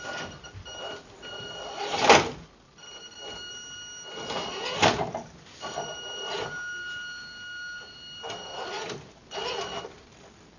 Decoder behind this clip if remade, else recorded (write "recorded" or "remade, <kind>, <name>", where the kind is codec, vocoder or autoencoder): recorded